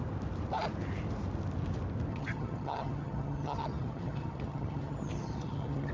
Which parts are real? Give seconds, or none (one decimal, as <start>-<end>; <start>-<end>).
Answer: 0.0-2.1